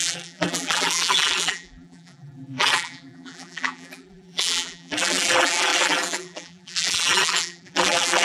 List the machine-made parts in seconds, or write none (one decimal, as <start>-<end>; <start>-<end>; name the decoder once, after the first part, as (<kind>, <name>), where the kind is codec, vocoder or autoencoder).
0.0-8.2 (vocoder, BigVGAN v2)